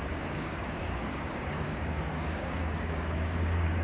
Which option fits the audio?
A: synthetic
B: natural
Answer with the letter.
A